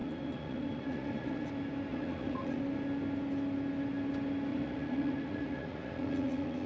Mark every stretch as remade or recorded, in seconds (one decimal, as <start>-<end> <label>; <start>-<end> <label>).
0.0-1.5 remade; 1.5-1.9 recorded; 1.9-2.6 remade; 2.6-4.5 recorded; 4.5-6.7 remade

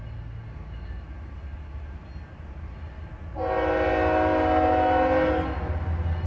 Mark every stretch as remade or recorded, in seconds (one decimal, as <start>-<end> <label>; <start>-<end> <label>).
0.0-6.3 recorded

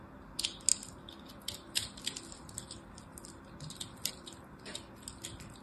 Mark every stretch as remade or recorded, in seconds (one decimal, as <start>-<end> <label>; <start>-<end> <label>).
0.0-5.6 recorded

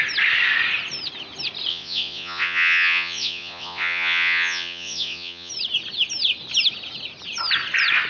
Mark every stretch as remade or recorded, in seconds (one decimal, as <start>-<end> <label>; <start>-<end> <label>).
0.0-1.7 recorded; 1.7-5.5 remade; 5.5-8.1 recorded

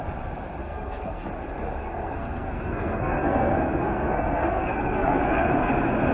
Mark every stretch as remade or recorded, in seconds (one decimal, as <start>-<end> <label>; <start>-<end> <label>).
0.0-0.6 recorded; 0.6-1.3 remade; 1.3-1.8 recorded; 1.8-5.5 remade; 5.5-6.1 recorded